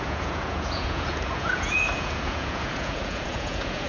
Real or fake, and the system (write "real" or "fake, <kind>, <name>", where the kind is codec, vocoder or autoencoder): fake, vocoder, Vocos